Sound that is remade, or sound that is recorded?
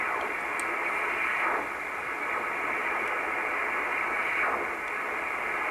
recorded